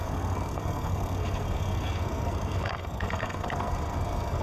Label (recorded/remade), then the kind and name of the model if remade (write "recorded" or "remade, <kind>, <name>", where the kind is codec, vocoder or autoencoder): remade, codec, SNAC